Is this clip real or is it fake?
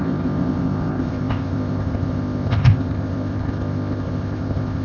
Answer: fake